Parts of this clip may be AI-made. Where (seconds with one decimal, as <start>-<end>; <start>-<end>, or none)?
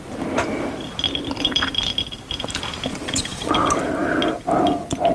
2.9-3.5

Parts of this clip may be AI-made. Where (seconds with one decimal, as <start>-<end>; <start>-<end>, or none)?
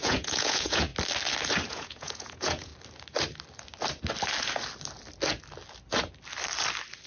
0.0-0.9; 1.7-2.7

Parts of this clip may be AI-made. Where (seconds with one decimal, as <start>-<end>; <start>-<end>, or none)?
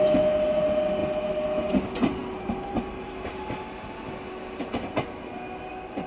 none